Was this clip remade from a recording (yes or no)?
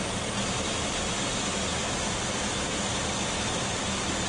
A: no